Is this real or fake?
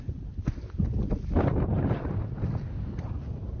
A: real